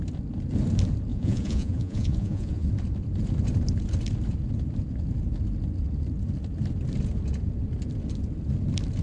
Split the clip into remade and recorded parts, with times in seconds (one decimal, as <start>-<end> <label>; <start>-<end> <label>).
0.0-1.1 recorded; 1.1-2.7 remade; 2.7-9.0 recorded